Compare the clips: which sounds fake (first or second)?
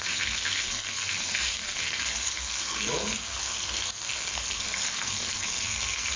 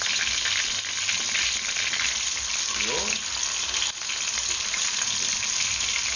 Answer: first